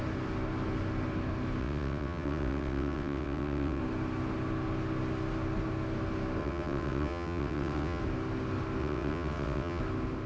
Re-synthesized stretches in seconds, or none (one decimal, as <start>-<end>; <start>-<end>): 1.6-3.8; 6.4-8.0; 8.8-9.8